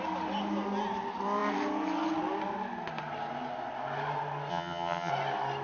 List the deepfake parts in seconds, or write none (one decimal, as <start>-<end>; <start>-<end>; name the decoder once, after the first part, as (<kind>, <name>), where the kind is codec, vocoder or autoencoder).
4.5-5.1 (vocoder, HiFi-GAN)